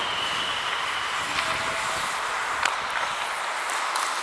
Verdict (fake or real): real